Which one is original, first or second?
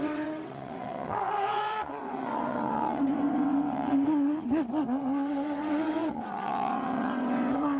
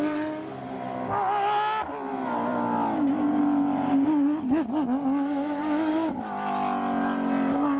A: second